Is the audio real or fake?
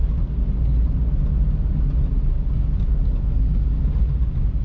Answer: real